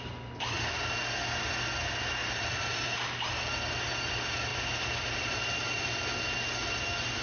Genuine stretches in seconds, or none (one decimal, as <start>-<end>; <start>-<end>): 0.0-2.2; 3.3-7.2